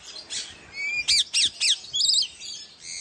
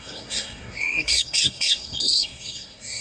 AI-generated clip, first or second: second